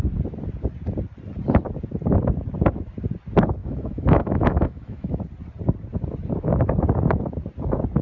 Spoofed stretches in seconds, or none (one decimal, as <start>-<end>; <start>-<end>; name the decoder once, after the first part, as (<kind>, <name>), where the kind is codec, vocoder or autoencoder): 3.6-5.2 (autoencoder, DAC-VAE)

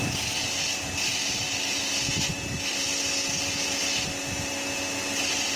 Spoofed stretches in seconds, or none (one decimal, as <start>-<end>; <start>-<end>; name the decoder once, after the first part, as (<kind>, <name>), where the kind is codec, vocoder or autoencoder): none

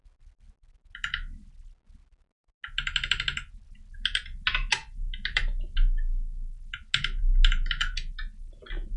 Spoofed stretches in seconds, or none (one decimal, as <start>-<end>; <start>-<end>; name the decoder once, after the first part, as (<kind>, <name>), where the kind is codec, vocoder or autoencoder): none

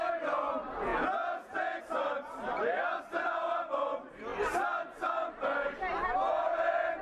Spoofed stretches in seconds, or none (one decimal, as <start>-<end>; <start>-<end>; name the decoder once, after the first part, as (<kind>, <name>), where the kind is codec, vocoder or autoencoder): 0.9-1.8 (vocoder, Vocos)

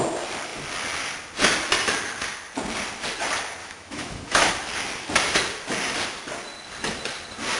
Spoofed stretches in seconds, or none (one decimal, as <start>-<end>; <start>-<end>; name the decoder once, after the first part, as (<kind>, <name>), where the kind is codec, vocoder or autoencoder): 3.6-4.5 (autoencoder, DAC-VAE)